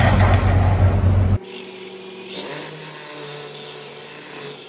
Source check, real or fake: real